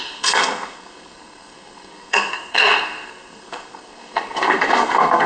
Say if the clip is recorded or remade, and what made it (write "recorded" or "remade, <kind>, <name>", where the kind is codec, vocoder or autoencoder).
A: remade, codec, SNAC